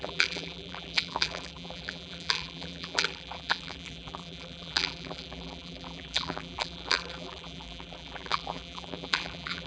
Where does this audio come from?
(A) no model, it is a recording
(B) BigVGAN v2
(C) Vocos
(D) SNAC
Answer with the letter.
B